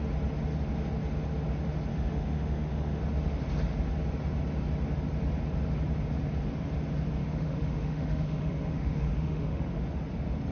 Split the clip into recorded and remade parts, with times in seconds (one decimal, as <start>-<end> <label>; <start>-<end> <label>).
0.0-1.9 recorded; 1.9-3.0 remade; 3.0-7.2 recorded; 7.2-9.7 remade; 9.7-10.5 recorded